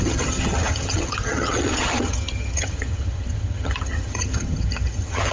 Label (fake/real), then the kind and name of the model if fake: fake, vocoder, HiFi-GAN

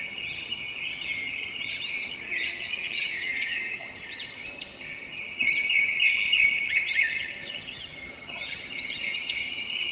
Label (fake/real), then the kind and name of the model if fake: fake, vocoder, HiFi-GAN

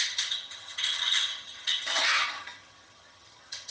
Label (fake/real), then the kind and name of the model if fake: fake, vocoder, HiFi-GAN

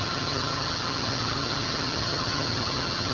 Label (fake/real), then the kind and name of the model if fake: fake, vocoder, HiFi-GAN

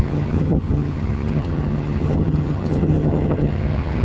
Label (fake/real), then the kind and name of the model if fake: fake, vocoder, HiFi-GAN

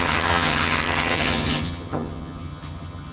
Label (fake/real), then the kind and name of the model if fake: fake, vocoder, HiFi-GAN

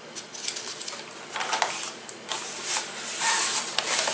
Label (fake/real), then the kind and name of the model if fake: real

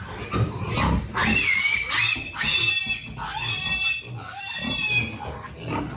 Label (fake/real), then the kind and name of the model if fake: real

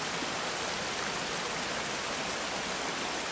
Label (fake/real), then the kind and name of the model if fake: real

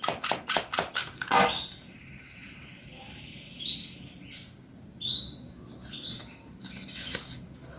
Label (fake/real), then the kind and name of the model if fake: real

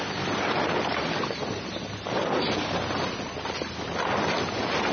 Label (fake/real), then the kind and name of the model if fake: real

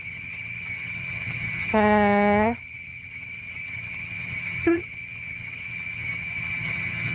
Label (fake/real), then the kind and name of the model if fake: fake, vocoder, HiFi-GAN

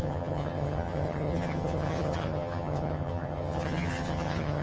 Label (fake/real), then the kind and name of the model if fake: fake, vocoder, HiFi-GAN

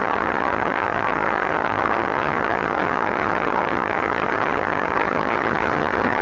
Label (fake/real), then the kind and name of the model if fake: fake, vocoder, HiFi-GAN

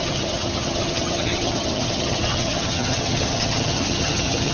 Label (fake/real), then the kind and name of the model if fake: fake, vocoder, HiFi-GAN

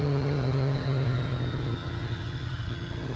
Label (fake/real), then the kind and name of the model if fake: fake, vocoder, HiFi-GAN